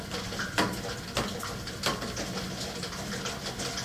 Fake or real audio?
real